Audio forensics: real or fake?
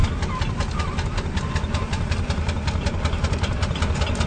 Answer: real